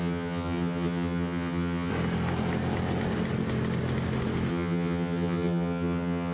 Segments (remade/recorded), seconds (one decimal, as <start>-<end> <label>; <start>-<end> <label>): 0.0-1.9 remade; 1.9-4.5 recorded; 4.5-6.3 remade